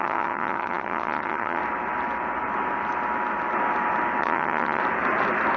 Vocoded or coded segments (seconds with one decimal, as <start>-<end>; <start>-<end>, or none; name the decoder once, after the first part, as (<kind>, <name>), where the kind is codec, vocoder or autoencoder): 0.0-1.6 (vocoder, HiFi-GAN); 4.2-4.8